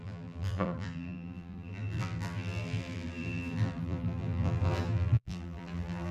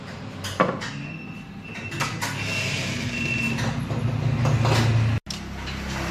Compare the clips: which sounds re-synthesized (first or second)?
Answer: first